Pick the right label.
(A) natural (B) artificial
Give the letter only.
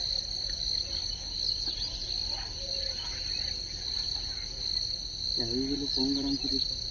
A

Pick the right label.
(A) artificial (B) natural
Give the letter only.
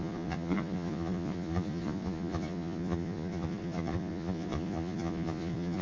A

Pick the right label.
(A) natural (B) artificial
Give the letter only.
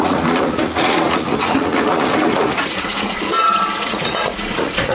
B